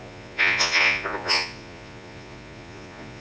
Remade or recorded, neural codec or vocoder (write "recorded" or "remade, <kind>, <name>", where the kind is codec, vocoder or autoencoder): remade, vocoder, Vocos